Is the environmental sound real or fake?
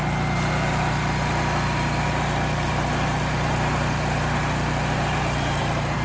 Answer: fake